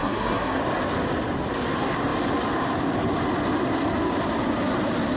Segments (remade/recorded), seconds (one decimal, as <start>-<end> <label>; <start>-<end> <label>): 0.0-0.6 remade; 0.6-5.2 recorded